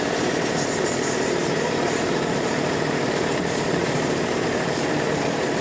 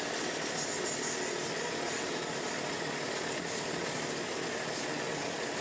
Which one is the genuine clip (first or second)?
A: second